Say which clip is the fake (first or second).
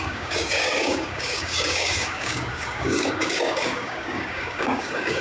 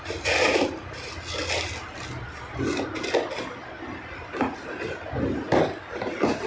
first